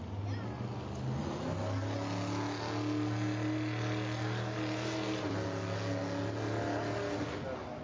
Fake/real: real